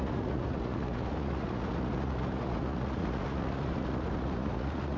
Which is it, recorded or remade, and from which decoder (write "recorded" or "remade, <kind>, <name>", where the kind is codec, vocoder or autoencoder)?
remade, vocoder, Vocos